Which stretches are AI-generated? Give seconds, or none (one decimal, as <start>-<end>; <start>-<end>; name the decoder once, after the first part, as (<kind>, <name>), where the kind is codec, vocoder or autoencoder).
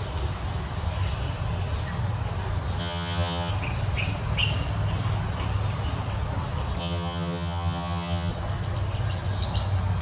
2.8-3.5 (vocoder, HiFi-GAN); 6.8-8.3